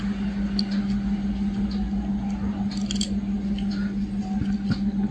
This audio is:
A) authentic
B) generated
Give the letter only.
A